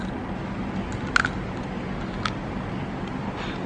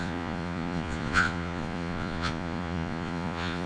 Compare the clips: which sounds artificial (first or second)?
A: second